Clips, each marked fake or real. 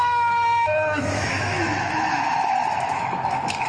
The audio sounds fake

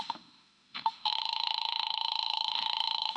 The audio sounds fake